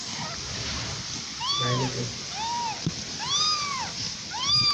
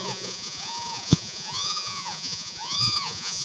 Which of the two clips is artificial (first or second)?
second